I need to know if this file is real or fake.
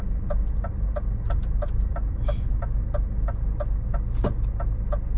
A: real